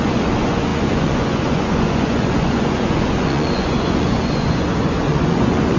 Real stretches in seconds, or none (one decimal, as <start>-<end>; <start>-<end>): none